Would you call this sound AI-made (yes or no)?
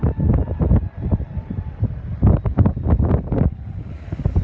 no